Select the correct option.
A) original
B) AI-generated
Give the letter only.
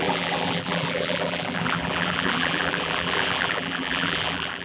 B